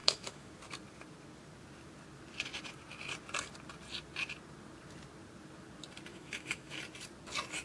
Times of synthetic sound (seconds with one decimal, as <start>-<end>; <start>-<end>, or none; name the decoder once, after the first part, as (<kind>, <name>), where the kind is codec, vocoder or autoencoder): 0.0-0.5 (autoencoder, DAC-VAE); 6.1-6.8